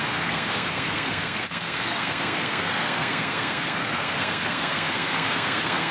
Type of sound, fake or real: fake